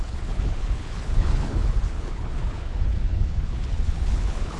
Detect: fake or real fake